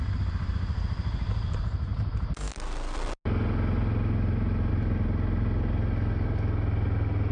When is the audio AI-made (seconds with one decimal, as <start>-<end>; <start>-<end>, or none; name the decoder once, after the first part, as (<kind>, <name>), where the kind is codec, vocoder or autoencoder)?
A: none